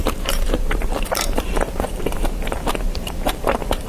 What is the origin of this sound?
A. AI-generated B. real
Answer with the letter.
A